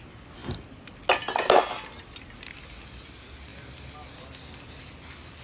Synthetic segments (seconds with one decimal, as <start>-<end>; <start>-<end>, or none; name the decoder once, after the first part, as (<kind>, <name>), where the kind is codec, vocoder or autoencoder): none